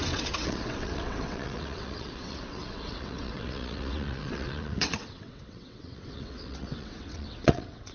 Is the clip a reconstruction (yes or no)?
yes